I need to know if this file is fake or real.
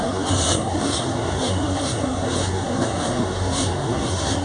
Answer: fake